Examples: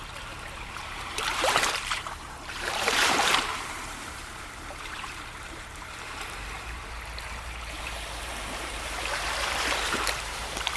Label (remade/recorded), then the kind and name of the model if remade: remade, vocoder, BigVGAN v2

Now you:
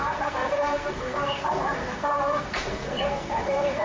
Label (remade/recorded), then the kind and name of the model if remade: remade, codec, SNAC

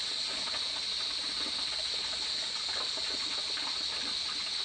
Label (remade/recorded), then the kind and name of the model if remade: recorded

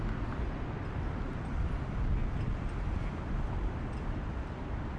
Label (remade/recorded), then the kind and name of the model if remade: recorded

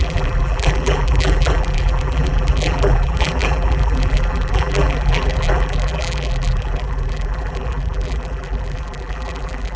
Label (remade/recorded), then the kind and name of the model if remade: remade, vocoder, BigVGAN v2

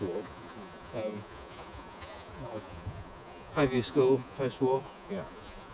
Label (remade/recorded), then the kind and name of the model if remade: remade, vocoder, Vocos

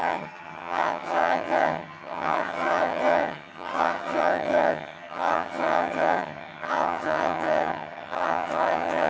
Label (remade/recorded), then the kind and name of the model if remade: remade, vocoder, HiFi-GAN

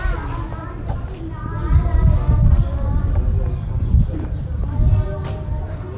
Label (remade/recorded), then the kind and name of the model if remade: recorded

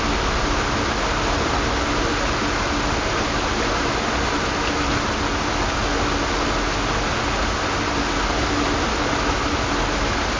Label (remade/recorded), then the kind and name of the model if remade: recorded